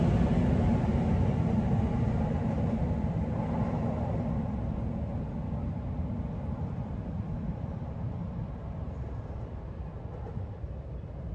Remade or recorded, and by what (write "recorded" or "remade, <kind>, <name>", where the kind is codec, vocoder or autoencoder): recorded